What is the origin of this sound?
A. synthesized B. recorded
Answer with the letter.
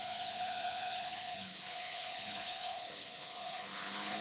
A